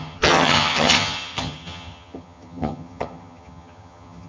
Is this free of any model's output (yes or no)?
no